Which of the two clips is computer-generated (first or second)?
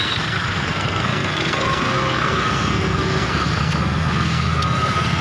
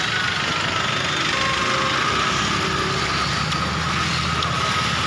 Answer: first